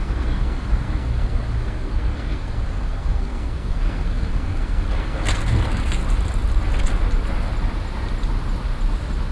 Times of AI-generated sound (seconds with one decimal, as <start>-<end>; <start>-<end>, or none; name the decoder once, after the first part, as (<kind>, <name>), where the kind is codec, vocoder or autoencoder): 0.0-6.0 (codec, SNAC)